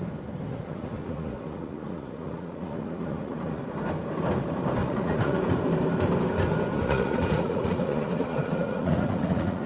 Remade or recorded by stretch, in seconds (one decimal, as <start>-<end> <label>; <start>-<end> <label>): 0.0-0.5 recorded; 0.5-3.6 remade; 3.6-4.8 recorded; 4.8-5.4 remade; 5.4-6.7 recorded; 6.7-9.7 remade